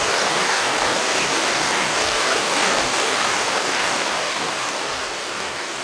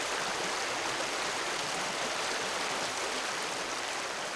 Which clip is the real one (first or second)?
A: second